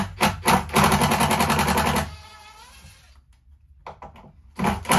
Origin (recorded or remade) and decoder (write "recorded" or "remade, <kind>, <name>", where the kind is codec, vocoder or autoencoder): recorded